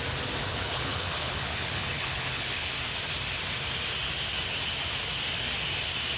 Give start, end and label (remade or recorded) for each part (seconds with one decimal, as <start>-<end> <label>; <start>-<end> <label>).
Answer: 0.0-0.4 recorded; 0.4-2.7 remade; 2.7-6.2 recorded